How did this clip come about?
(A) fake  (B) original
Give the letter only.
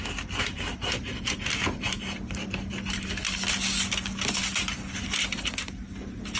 B